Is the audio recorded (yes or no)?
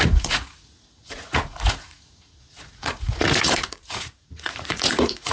no